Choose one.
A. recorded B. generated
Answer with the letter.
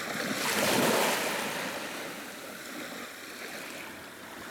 A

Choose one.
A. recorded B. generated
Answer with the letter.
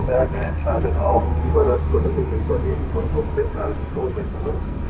B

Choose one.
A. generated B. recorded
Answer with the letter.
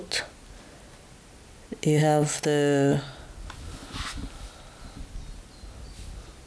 B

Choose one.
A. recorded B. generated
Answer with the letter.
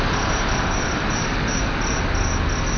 A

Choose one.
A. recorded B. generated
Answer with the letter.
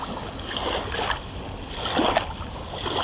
A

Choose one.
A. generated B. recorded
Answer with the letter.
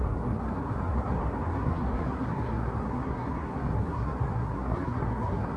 A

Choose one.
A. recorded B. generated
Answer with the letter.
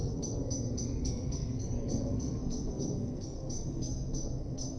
B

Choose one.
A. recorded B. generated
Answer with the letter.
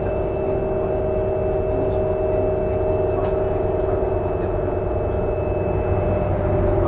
A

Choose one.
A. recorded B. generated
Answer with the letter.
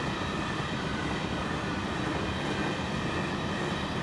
A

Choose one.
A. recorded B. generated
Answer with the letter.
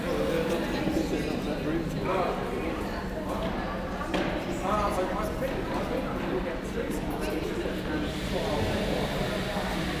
A